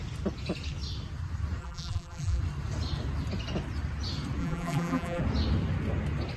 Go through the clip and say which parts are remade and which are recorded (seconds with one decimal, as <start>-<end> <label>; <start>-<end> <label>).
0.0-1.6 recorded; 1.6-2.4 remade; 2.4-4.4 recorded; 4.4-5.2 remade; 5.2-6.4 recorded

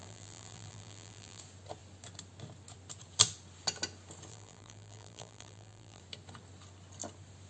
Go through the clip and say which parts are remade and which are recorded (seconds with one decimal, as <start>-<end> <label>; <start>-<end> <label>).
0.0-1.4 remade; 1.4-4.3 recorded; 4.3-6.0 remade; 6.0-7.5 recorded

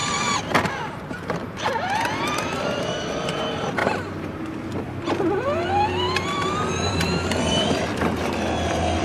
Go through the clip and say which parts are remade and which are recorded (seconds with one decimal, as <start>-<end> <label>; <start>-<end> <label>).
0.0-3.8 remade; 3.8-6.9 recorded; 6.9-9.0 remade

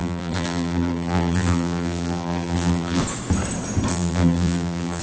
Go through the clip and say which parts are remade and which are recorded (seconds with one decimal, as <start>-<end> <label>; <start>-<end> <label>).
0.0-3.0 remade; 3.0-3.9 recorded; 3.9-5.0 remade

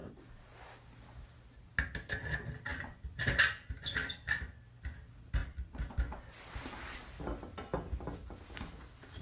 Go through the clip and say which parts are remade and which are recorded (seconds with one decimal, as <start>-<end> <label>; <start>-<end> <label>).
0.0-9.2 recorded

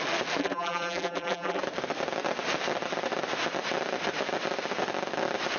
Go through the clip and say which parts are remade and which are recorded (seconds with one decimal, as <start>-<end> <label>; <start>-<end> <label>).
0.0-0.4 recorded; 0.4-1.6 remade; 1.6-5.6 recorded

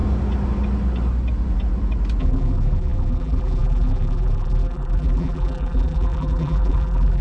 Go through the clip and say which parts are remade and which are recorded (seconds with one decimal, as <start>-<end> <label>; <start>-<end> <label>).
0.0-2.2 recorded; 2.2-7.2 remade

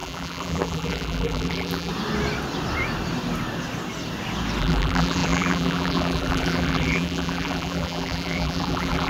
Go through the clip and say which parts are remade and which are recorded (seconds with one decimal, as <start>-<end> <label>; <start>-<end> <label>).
0.0-1.9 remade; 1.9-4.6 recorded; 4.6-9.1 remade